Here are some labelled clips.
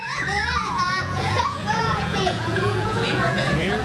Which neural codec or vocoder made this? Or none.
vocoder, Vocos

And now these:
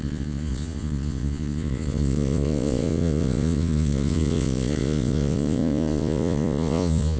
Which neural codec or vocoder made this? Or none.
vocoder, Vocos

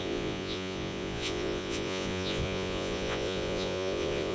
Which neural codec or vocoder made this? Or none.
vocoder, Vocos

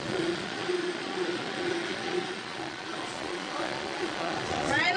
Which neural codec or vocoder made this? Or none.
vocoder, Vocos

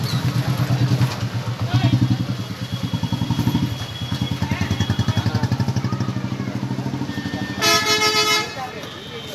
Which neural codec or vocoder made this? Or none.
none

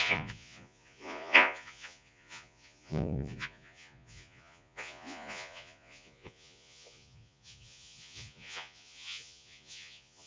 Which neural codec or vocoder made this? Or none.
vocoder, Vocos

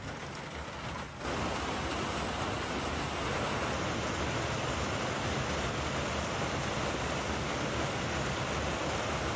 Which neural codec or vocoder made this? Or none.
none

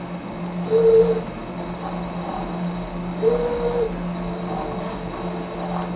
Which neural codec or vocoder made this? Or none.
none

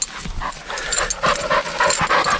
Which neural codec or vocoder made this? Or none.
none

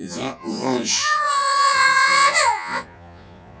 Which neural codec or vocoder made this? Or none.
vocoder, Vocos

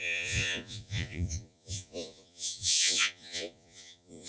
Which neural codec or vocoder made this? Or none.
vocoder, Vocos